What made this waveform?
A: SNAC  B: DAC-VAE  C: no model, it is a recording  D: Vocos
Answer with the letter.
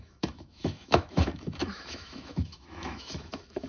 B